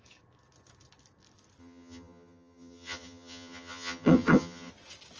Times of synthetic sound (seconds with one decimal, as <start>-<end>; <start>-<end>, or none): 1.6-4.7